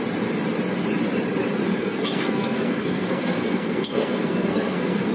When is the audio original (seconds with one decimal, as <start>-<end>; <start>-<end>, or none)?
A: 0.0-1.7

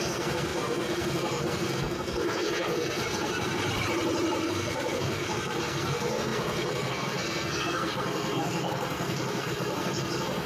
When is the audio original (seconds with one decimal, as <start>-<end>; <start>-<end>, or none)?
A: 3.6-4.4

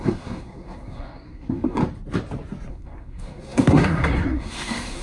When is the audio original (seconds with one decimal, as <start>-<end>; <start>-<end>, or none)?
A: 1.8-2.7

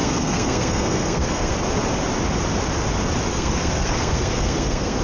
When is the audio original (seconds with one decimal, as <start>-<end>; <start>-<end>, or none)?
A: 1.5-3.3